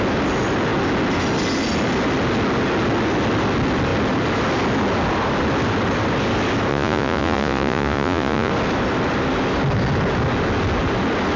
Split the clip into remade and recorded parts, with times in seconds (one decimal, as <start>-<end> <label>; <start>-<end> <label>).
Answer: 0.0-6.7 recorded; 6.7-8.5 remade; 8.5-11.4 recorded